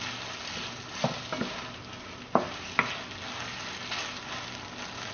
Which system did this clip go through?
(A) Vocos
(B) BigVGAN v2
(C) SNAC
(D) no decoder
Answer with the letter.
D